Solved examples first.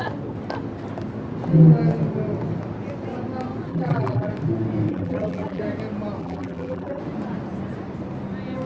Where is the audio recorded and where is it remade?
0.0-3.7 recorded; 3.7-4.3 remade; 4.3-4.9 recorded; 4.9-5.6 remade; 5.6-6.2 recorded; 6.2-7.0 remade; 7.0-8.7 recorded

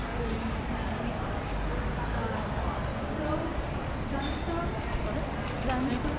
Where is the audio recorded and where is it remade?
0.0-3.5 recorded; 3.5-5.0 remade; 5.0-6.2 recorded

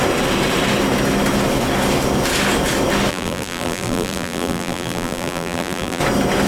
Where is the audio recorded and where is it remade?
0.0-3.1 recorded; 3.1-6.0 remade; 6.0-6.5 recorded

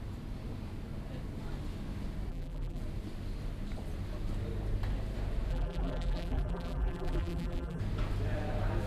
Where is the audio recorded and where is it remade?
0.0-2.3 recorded; 2.3-2.8 remade; 2.8-5.5 recorded; 5.5-7.8 remade; 7.8-8.9 recorded

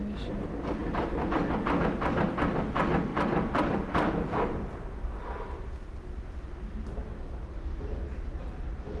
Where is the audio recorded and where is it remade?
0.0-3.1 recorded; 3.1-5.2 remade; 5.2-9.0 recorded